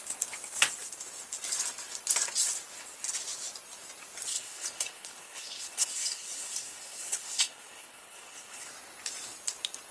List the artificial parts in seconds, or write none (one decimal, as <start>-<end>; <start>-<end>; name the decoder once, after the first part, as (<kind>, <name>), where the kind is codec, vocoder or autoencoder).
4.3-8.7 (codec, HILCodec)